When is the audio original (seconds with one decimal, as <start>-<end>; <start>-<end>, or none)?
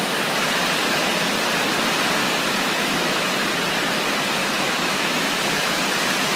0.0-0.8; 1.3-2.2; 3.3-4.4; 5.8-6.4